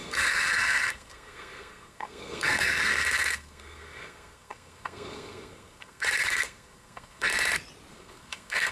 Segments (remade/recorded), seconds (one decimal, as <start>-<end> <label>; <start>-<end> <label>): 0.0-7.3 remade; 7.3-7.9 recorded; 7.9-8.7 remade